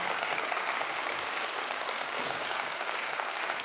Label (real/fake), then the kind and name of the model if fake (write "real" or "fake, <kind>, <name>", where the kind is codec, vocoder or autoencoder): fake, codec, DAC